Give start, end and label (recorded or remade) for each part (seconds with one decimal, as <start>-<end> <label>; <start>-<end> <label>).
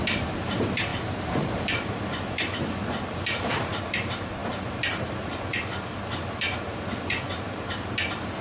0.0-8.4 remade